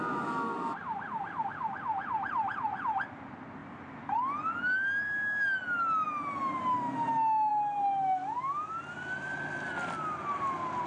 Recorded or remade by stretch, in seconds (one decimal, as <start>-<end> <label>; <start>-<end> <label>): 0.0-10.9 recorded